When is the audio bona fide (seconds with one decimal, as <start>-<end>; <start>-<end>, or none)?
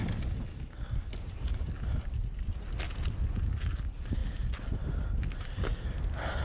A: 0.0-0.5; 1.1-6.4